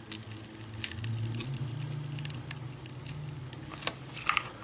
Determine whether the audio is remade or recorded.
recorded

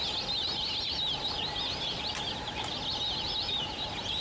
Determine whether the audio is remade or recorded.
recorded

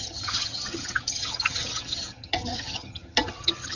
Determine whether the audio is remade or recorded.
remade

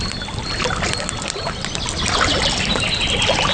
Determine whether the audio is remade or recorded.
recorded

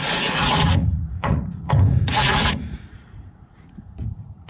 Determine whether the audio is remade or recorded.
remade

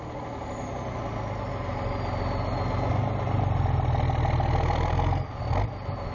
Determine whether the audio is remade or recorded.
recorded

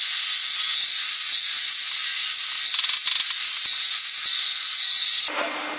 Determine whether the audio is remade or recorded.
recorded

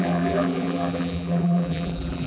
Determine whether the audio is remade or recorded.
remade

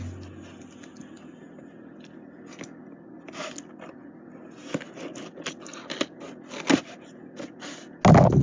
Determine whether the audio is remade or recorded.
recorded